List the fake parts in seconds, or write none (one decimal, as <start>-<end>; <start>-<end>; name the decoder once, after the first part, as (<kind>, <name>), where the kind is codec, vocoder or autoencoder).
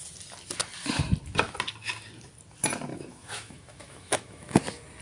2.9-4.6 (autoencoder, DAC-VAE)